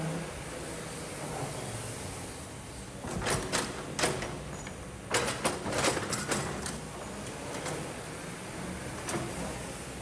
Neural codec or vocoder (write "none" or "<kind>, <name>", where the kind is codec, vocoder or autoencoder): none